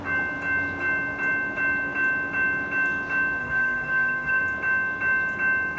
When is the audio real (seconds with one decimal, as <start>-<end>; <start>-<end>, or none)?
0.0-3.4; 4.4-5.8